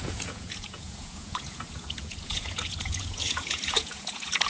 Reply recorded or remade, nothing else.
remade